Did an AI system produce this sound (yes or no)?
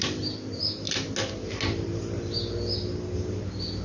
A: no